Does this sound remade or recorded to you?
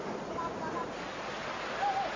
recorded